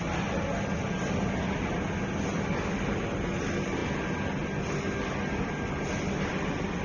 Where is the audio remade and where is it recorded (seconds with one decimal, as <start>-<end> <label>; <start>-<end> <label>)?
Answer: 0.0-6.8 recorded